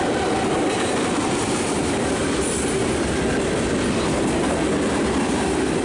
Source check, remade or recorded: recorded